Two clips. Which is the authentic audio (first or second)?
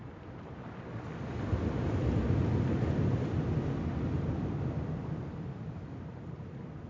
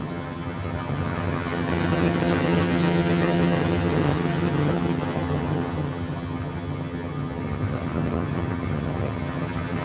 first